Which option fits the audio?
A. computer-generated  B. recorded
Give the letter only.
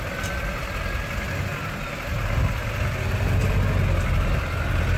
B